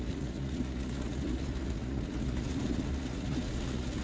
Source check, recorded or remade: remade